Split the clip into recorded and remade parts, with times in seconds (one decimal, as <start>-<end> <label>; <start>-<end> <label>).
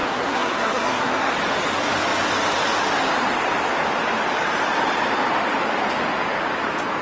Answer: 0.0-1.3 remade; 1.3-7.0 recorded